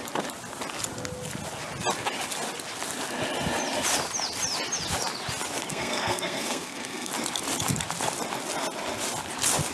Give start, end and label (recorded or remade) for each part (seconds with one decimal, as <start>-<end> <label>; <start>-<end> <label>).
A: 0.0-5.7 recorded; 5.7-7.1 remade; 7.1-9.7 recorded